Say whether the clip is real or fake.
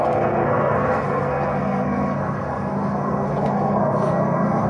fake